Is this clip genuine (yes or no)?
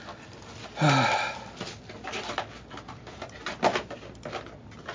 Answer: yes